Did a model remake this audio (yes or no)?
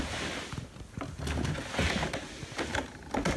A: no